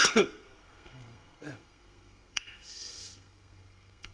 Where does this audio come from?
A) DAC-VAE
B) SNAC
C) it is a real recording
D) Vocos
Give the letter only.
B